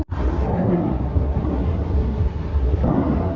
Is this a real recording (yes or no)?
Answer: no